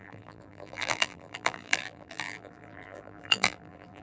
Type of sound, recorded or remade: remade